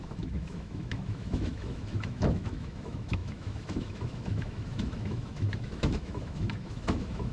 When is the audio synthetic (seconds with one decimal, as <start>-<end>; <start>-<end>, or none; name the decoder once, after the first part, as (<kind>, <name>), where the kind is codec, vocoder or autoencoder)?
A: 0.0-7.3 (autoencoder, DAC-VAE)